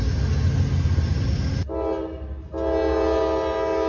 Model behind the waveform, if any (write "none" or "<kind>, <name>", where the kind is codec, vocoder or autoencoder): none